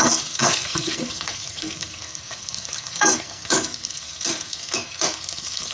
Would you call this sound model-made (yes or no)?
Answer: yes